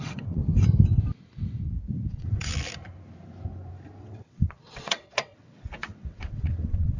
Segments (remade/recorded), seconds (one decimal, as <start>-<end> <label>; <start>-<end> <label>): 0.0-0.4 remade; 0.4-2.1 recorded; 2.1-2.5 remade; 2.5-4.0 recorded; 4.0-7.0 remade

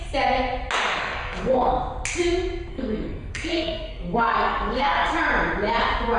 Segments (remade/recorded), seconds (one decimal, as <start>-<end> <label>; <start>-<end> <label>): 0.0-1.0 recorded; 1.0-1.7 remade; 1.7-2.7 recorded; 2.7-5.1 remade; 5.1-6.2 recorded

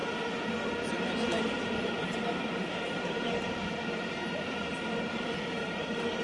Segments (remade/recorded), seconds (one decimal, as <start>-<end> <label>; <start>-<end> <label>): 0.0-1.4 recorded; 1.4-4.7 remade; 4.7-6.2 recorded

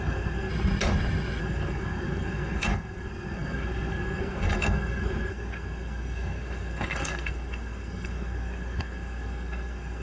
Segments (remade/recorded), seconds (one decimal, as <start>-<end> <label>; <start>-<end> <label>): 0.0-0.5 remade; 0.5-1.4 recorded; 1.4-10.0 remade